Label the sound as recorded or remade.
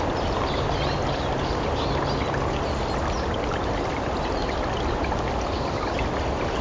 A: recorded